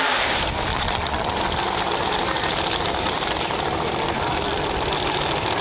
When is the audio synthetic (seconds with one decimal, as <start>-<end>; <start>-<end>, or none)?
0.7-1.3